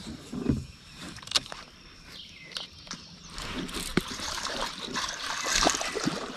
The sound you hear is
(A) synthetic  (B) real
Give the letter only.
A